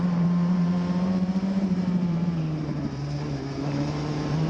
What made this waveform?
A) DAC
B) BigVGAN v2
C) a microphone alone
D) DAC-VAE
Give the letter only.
B